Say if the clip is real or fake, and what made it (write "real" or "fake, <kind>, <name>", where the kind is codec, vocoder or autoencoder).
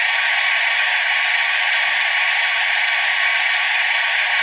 real